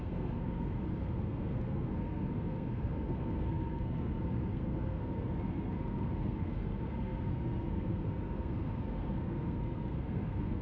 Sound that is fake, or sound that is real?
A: fake